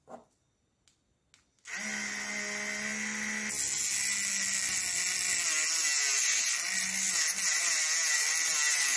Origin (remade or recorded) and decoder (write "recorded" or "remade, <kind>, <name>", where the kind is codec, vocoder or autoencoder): recorded